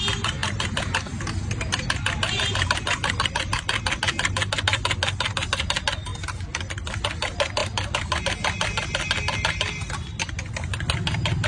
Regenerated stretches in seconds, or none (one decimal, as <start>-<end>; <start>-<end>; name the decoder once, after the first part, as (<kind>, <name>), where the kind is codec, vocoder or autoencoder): none